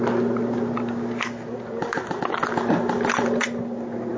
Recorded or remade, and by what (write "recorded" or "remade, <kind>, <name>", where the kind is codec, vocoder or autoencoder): recorded